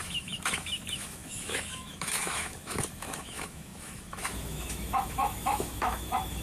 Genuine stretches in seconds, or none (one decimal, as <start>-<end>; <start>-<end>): none